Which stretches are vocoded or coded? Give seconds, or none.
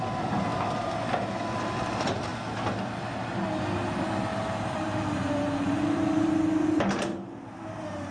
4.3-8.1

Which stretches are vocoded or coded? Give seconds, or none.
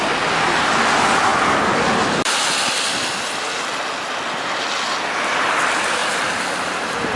none